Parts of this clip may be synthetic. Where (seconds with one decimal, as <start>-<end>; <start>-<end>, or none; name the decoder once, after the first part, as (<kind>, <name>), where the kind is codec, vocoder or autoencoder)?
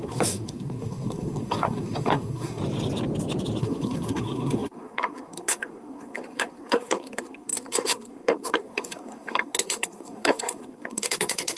0.0-2.6 (codec, SNAC); 3.6-11.6